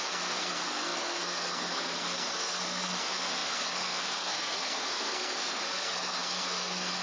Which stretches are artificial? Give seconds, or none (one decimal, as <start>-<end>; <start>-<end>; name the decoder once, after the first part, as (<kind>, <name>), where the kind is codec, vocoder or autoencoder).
0.0-7.0 (codec, SNAC)